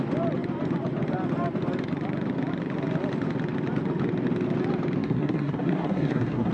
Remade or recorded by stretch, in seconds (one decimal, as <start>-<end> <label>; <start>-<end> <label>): 0.0-5.0 recorded; 5.0-6.5 remade